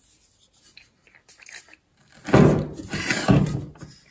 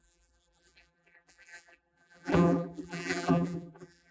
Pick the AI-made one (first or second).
second